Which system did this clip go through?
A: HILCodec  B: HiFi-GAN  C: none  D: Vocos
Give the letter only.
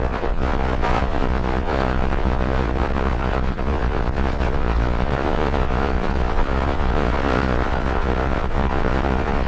D